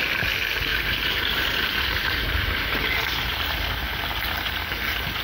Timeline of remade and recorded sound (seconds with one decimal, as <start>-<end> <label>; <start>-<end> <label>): 0.0-0.7 recorded; 0.7-3.8 remade; 3.8-5.2 recorded